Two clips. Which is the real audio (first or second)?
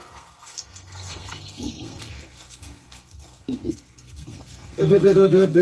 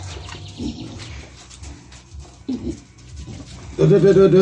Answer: second